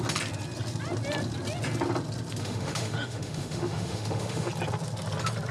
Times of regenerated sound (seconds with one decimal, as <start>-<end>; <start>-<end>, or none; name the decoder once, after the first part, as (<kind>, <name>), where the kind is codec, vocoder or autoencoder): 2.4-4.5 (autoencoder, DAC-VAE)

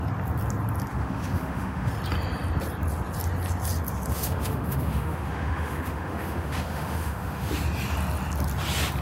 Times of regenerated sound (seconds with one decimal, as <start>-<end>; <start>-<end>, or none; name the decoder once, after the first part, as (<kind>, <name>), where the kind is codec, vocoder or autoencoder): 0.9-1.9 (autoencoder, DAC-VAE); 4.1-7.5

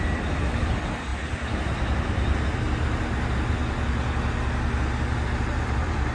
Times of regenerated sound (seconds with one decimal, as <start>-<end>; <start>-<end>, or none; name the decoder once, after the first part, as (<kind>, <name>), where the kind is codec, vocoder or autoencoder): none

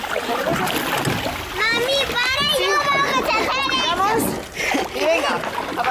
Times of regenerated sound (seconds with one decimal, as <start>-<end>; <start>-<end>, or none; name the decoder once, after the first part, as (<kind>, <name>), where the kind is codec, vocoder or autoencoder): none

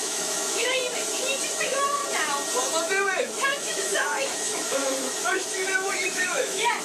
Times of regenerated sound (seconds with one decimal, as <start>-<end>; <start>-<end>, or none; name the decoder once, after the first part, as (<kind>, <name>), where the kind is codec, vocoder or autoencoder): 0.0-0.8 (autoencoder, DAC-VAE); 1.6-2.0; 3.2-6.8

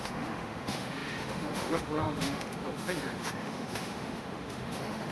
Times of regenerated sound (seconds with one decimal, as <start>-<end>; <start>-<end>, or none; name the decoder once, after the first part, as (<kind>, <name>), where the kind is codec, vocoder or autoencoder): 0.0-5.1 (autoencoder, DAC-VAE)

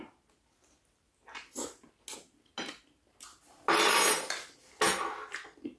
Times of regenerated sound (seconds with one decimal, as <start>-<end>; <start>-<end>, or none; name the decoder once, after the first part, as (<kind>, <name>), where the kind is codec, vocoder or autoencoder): none

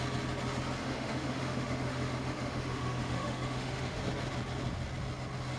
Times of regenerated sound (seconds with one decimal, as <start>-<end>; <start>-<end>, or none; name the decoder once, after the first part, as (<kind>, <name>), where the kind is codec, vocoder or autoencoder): 0.8-4.0 (autoencoder, DAC-VAE)